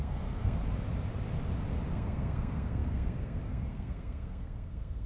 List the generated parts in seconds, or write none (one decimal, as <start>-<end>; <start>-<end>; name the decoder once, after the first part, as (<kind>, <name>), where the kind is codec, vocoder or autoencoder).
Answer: 0.0-0.6 (codec, SNAC); 1.9-5.1